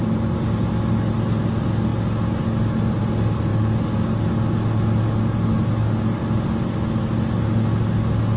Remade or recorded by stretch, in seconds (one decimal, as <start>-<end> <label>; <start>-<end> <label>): 0.0-8.4 recorded